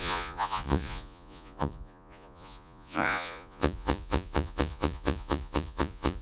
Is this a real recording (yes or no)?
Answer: no